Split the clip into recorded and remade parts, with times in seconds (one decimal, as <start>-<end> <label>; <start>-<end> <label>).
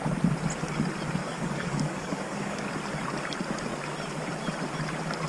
0.0-1.2 recorded; 1.2-2.7 remade; 2.7-5.3 recorded